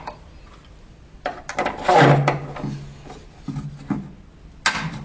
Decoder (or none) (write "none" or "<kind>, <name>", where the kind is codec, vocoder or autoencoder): none